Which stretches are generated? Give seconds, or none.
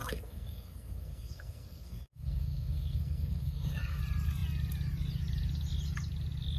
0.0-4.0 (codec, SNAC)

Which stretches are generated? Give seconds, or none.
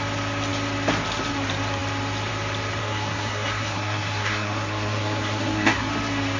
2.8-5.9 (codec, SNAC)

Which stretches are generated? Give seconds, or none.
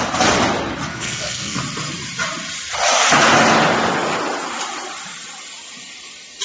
0.9-1.6 (codec, SNAC)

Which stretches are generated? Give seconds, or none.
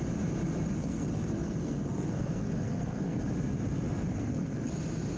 0.8-3.2 (codec, SNAC); 4.1-4.7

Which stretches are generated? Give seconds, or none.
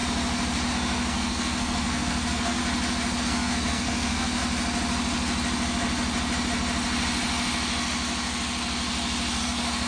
0.7-2.6 (codec, SNAC); 3.2-4.4; 9.4-9.9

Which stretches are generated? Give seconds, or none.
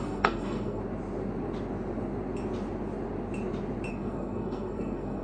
0.0-0.8 (codec, SNAC); 3.9-5.2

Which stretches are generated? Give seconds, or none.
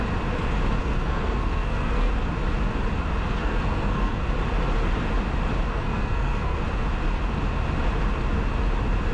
0.8-2.1 (codec, SNAC); 3.4-4.2; 5.7-6.6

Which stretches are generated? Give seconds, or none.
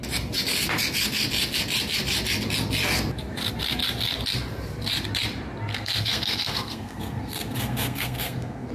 5.7-8.7 (codec, SNAC)